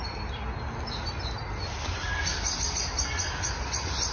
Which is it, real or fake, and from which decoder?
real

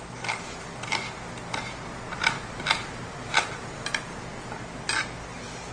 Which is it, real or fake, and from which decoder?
real